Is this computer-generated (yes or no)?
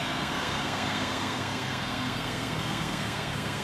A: yes